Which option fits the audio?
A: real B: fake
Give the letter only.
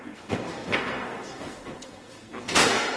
B